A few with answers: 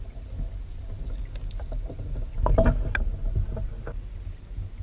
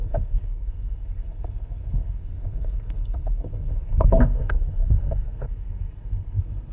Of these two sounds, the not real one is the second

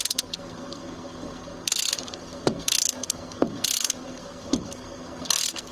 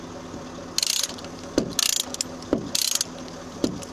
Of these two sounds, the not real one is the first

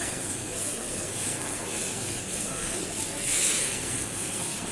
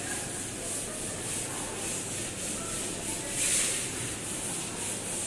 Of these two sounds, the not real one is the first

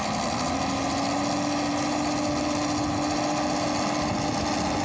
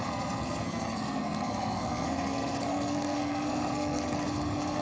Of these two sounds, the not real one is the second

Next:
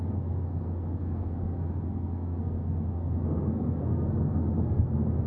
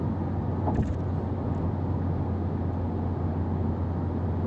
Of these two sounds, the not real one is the first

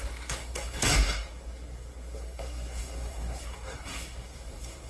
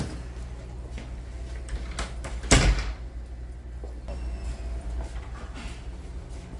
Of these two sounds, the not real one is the first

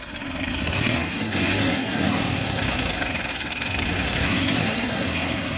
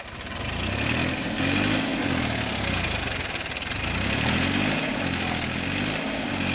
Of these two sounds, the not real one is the first